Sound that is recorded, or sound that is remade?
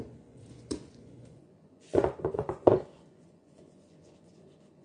remade